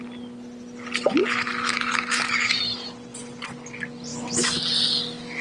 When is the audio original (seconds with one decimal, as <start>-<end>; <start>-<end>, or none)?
0.0-1.2; 2.6-4.1; 4.6-5.4